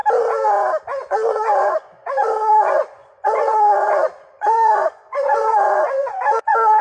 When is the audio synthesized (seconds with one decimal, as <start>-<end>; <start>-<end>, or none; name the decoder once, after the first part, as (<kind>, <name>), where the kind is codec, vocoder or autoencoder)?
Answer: 1.0-6.8 (vocoder, Vocos)